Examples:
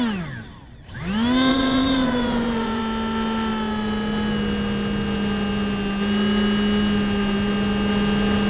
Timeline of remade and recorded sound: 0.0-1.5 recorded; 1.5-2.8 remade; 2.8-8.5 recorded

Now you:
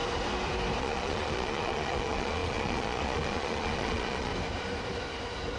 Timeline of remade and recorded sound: 0.0-0.8 recorded; 0.8-4.3 remade; 4.3-5.6 recorded

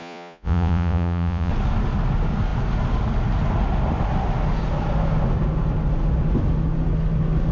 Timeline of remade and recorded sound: 0.0-1.5 remade; 1.5-7.5 recorded

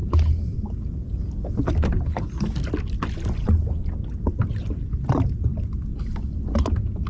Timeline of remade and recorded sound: 0.0-7.1 recorded

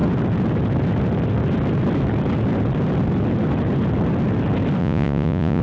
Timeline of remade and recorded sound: 0.0-4.8 recorded; 4.8-5.6 remade

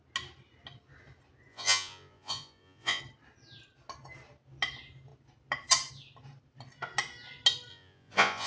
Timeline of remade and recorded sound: 0.0-1.5 recorded; 1.5-3.0 remade; 3.0-7.7 recorded; 7.7-8.5 remade

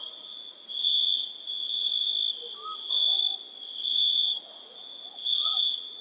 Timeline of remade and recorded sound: 0.0-1.9 remade; 1.9-3.8 recorded; 3.8-6.0 remade

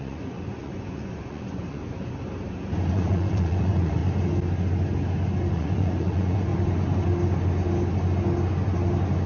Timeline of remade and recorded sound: 0.0-1.8 remade; 1.8-2.9 recorded; 2.9-4.0 remade; 4.0-5.5 recorded; 5.5-6.5 remade; 6.5-9.3 recorded